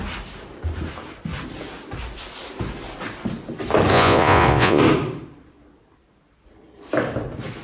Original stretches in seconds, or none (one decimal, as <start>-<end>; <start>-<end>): 0.0-3.9; 4.8-7.6